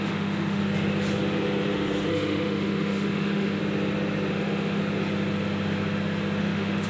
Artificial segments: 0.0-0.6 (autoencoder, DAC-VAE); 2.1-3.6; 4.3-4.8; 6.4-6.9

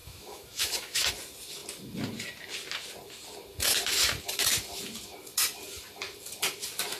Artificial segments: 0.0-1.1 (autoencoder, DAC-VAE)